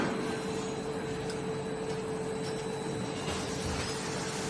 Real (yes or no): yes